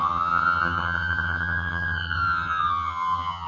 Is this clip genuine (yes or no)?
no